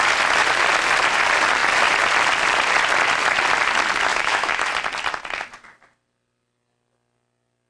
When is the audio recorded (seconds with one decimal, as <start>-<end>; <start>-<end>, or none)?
0.0-4.1; 4.7-7.7